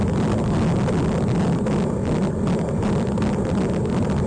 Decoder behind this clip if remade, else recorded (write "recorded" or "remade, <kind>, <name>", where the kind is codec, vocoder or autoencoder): recorded